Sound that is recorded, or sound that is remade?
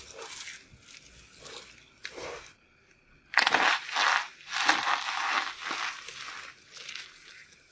recorded